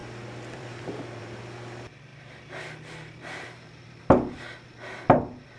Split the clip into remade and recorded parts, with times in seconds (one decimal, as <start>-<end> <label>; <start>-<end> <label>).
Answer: 0.0-1.4 remade; 1.4-2.1 recorded; 2.1-4.0 remade; 4.0-5.6 recorded